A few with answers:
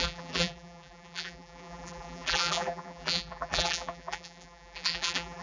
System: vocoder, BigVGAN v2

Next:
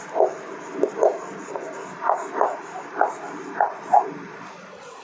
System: none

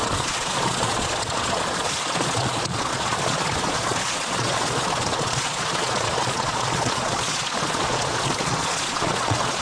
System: vocoder, Vocos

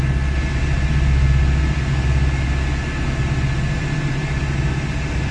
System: none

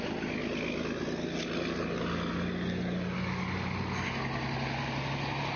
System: none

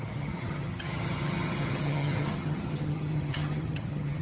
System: vocoder, HiFi-GAN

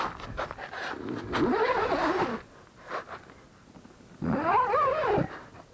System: none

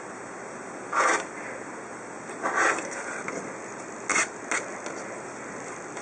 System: none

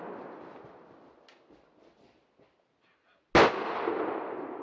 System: none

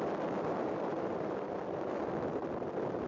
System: none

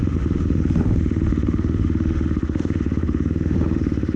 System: autoencoder, DAC-VAE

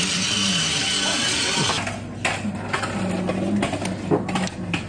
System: none